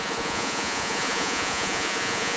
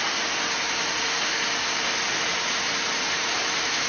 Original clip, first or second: second